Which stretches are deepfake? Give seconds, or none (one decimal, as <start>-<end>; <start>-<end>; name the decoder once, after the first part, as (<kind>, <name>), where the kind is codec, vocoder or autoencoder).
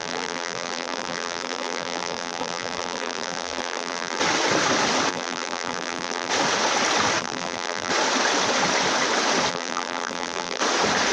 0.0-4.2 (vocoder, BigVGAN v2); 5.1-6.3; 7.2-7.9; 9.5-10.6